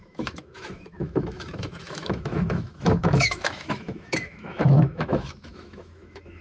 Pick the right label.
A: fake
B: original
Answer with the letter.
A